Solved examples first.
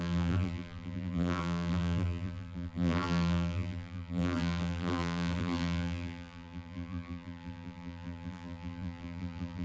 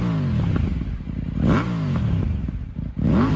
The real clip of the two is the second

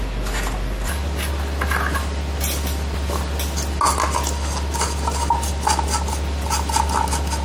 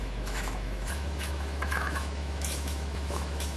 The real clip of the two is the first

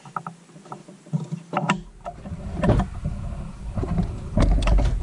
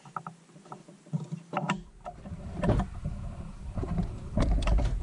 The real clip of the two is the first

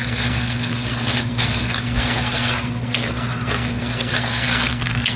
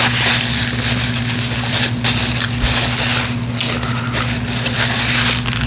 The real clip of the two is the second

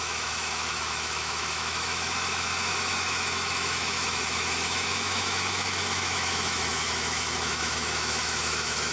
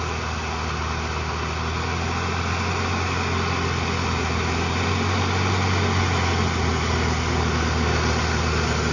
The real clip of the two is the second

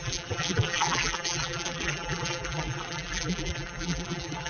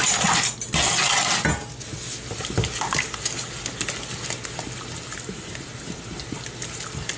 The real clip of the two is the second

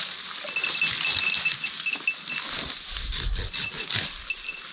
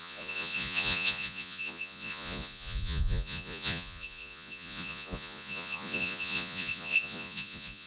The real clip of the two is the first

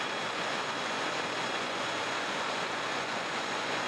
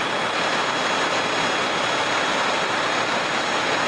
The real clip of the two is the second